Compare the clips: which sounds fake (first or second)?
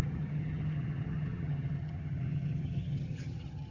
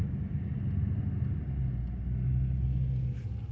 first